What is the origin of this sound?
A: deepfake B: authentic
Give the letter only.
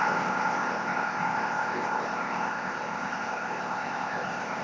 A